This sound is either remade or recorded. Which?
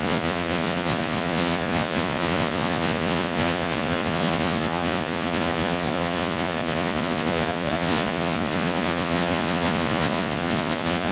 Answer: remade